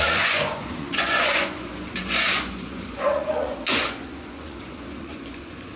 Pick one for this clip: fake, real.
fake